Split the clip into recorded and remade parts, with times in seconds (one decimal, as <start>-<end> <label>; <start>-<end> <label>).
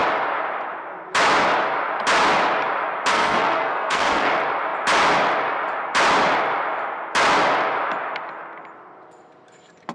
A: 0.0-3.1 recorded; 3.1-4.3 remade; 4.3-9.9 recorded